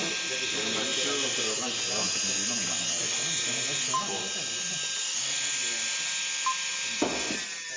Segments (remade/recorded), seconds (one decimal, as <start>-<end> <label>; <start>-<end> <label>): 0.0-7.8 recorded